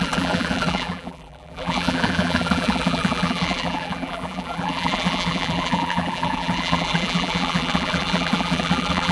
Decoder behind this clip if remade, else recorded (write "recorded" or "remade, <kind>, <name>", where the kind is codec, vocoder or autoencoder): remade, vocoder, BigVGAN v2